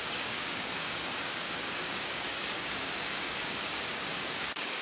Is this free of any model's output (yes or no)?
no